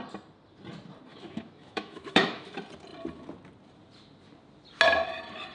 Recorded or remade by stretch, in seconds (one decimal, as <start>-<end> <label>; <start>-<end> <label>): 0.0-1.1 recorded; 1.1-2.5 remade; 2.5-5.5 recorded